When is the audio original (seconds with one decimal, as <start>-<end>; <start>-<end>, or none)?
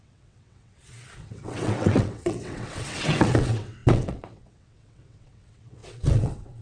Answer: none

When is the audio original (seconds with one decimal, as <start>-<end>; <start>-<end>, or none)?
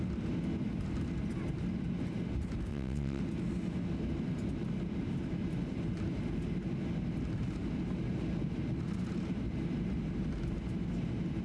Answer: 0.0-2.7; 3.2-11.4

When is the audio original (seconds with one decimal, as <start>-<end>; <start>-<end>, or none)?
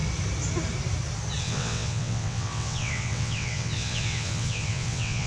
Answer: 0.0-1.4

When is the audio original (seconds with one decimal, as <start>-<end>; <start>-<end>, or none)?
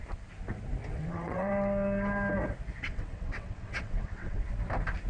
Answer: 0.0-0.9; 1.5-2.8; 4.4-5.1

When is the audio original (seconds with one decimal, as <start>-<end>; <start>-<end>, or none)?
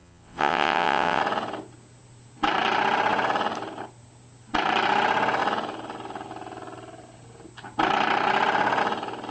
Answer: 1.2-9.3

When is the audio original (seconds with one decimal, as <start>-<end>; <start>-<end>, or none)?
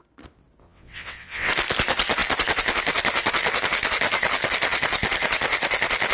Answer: 0.0-0.6; 1.5-6.1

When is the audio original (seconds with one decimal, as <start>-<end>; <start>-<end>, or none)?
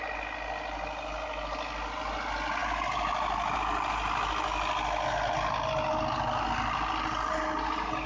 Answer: 0.0-8.1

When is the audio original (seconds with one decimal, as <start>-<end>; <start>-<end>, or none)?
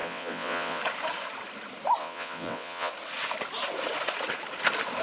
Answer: 0.8-2.0; 2.9-5.0